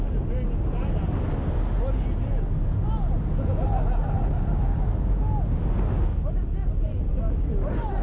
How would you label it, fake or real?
real